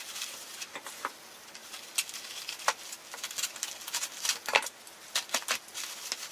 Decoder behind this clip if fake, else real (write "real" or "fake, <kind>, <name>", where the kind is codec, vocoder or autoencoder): real